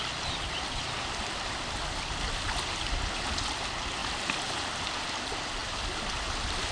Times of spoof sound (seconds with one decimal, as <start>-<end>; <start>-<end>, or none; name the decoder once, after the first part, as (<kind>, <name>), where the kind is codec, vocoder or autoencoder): 5.6-6.7 (vocoder, BigVGAN v2)